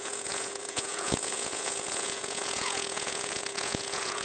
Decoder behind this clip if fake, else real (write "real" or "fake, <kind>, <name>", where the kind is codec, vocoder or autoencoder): fake, vocoder, Vocos